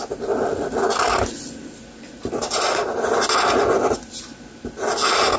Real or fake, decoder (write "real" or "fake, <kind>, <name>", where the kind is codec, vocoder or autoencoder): real